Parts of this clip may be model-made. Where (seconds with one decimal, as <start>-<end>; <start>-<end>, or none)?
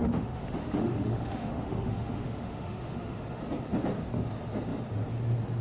0.0-3.4